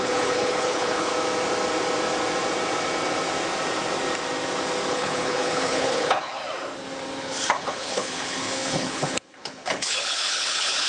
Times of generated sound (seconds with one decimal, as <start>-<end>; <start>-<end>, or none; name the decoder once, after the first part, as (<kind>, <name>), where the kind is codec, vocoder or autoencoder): 0.0-1.1 (codec, HILCodec); 4.9-6.4; 7.2-10.9